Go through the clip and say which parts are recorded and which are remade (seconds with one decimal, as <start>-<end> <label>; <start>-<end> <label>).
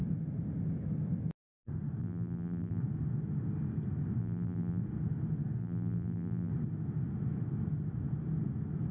0.0-2.0 recorded; 2.0-2.8 remade; 2.8-4.2 recorded; 4.2-4.8 remade; 4.8-5.6 recorded; 5.6-6.5 remade; 6.5-8.9 recorded